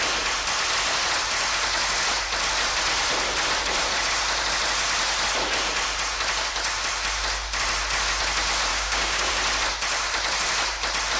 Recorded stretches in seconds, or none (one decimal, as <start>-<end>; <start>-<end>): 0.0-8.7; 9.3-11.2